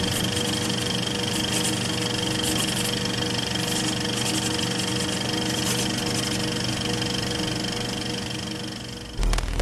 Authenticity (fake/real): real